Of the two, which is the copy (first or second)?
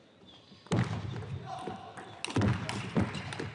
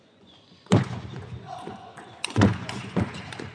second